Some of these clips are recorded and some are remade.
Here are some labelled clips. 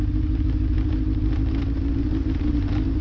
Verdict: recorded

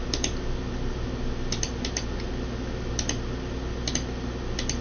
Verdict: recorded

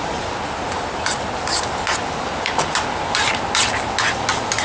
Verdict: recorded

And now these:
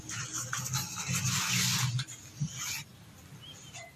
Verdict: recorded